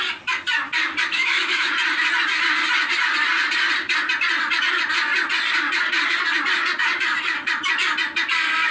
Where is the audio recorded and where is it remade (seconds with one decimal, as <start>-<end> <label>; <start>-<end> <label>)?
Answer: 0.0-1.1 recorded; 1.1-1.7 remade; 1.7-8.7 recorded